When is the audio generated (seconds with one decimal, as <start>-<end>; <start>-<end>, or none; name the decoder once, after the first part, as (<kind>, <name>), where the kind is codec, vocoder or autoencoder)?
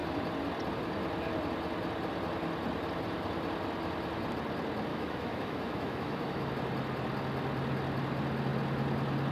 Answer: 4.9-6.5 (autoencoder, DAC-VAE)